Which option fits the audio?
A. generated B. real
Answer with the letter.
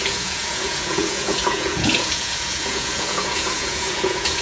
A